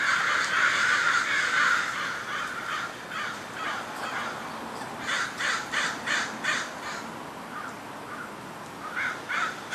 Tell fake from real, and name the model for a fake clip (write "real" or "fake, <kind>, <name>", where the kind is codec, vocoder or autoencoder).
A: real